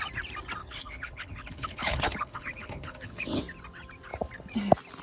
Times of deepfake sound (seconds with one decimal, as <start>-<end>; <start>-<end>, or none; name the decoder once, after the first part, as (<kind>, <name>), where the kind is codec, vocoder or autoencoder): 0.6-3.4 (codec, HILCodec)